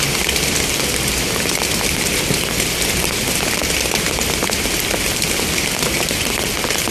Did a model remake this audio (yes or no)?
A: no